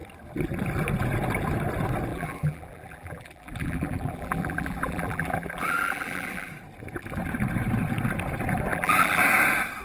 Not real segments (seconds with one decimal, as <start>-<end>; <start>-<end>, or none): 2.1-6.5; 8.7-9.2

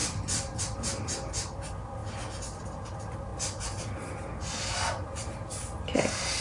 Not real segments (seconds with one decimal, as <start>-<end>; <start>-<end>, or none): 0.0-0.6

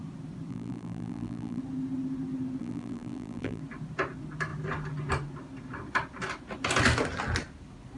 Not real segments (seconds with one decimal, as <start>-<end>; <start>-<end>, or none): 0.5-1.6; 2.6-3.6

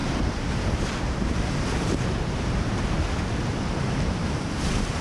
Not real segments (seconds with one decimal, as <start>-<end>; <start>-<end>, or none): 0.0-2.8; 3.7-5.0

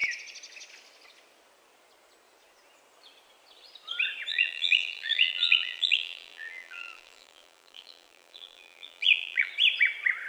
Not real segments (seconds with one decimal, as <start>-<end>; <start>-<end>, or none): 4.3-9.5